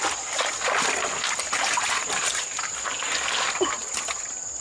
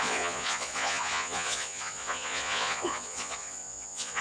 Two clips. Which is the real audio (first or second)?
first